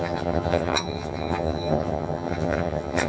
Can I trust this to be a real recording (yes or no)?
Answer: no